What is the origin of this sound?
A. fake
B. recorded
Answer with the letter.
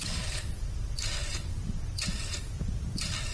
B